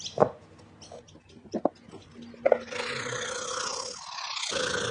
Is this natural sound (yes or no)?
yes